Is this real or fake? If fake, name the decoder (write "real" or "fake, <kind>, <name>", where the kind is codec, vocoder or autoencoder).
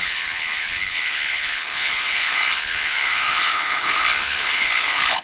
fake, codec, HILCodec